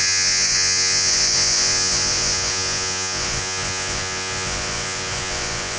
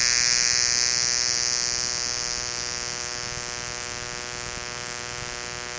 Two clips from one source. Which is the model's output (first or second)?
first